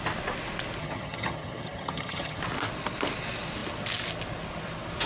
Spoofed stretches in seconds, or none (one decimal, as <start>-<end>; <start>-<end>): 0.8-2.4